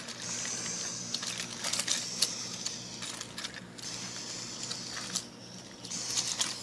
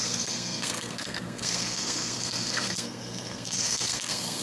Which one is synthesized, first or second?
second